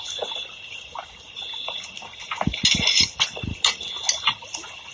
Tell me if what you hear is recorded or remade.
recorded